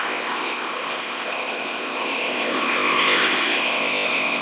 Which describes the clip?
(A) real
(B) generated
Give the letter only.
B